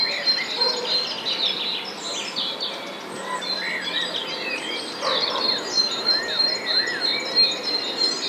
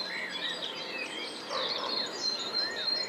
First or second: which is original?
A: first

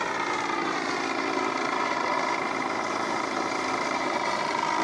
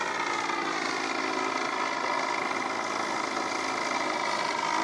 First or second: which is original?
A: second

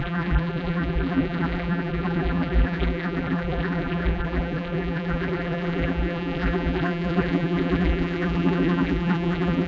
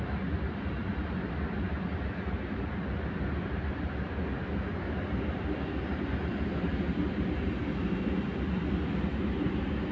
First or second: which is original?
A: second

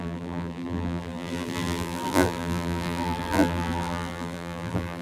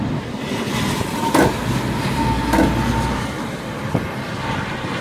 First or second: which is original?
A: second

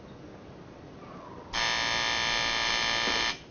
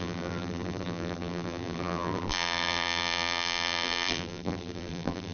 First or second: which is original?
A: first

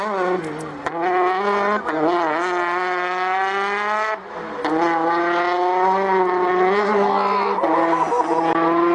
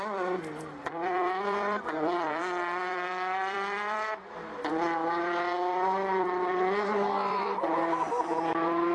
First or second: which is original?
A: first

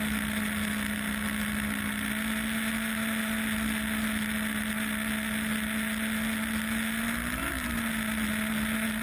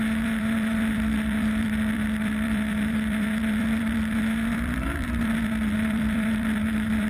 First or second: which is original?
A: first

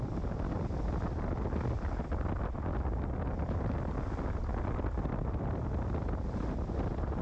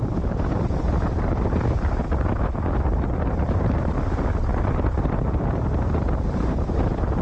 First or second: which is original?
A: first